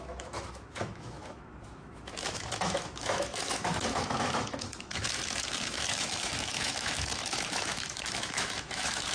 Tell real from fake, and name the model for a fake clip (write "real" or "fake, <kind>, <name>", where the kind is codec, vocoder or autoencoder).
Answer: fake, autoencoder, DAC-VAE